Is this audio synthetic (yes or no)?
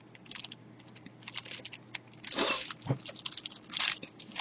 no